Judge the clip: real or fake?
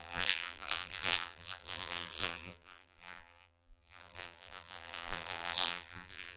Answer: fake